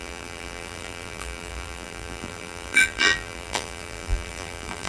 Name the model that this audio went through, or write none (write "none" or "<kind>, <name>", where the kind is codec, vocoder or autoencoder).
vocoder, BigVGAN v2